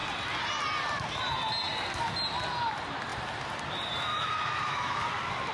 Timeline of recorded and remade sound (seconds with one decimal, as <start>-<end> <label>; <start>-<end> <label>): 0.0-4.1 recorded; 4.1-5.0 remade; 5.0-5.5 recorded